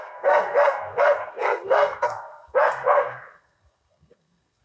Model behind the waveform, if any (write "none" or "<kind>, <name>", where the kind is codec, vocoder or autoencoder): codec, SNAC